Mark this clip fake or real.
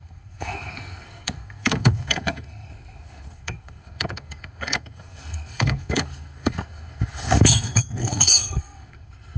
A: fake